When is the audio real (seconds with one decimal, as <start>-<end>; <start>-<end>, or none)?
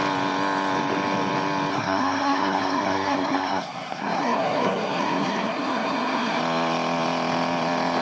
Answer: 0.0-1.7; 6.4-8.0